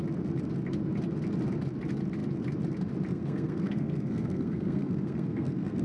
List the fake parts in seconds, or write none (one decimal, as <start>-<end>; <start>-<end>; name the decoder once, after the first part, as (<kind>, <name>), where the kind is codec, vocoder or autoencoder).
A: 3.1-5.8 (codec, SNAC)